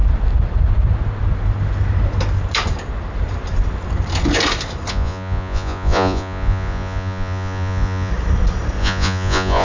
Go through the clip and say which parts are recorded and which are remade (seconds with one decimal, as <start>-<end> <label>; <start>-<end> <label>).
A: 0.0-4.9 recorded; 4.9-8.1 remade; 8.1-8.8 recorded; 8.8-9.6 remade